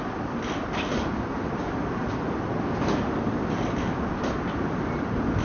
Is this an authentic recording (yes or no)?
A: yes